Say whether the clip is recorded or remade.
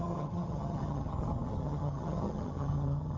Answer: remade